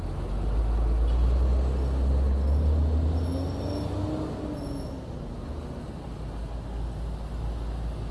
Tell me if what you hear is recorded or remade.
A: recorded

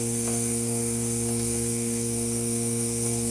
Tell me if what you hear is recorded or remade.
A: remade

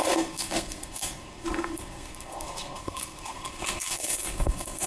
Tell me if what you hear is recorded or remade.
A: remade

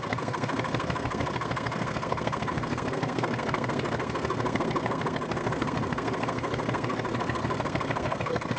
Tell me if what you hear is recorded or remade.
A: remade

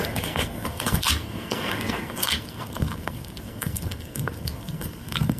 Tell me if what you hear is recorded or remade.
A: remade